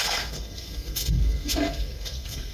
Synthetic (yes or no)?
yes